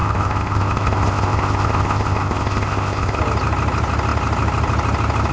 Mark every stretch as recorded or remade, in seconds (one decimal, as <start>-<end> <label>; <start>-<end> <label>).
0.0-3.2 remade; 3.2-5.3 recorded